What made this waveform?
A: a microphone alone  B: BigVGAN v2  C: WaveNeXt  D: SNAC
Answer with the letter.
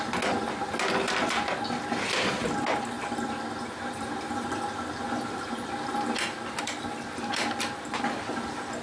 A